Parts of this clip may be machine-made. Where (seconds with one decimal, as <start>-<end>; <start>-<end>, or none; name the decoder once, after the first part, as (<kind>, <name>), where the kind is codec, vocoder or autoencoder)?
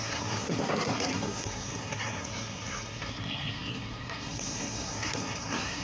0.0-5.8 (codec, SNAC)